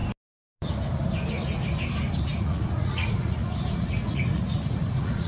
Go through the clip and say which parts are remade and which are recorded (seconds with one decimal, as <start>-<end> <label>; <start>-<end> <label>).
0.0-2.3 recorded; 2.3-5.3 remade